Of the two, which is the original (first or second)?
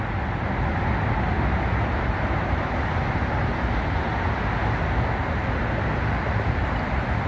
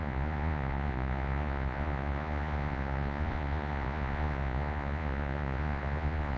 first